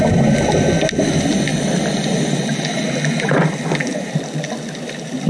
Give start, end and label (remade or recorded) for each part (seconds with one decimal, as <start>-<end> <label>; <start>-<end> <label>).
0.0-5.3 recorded